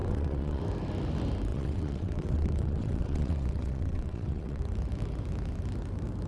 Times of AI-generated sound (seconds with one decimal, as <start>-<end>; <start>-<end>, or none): 0.0-0.6; 1.5-4.6